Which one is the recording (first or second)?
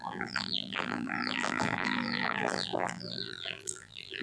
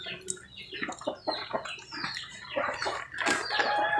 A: second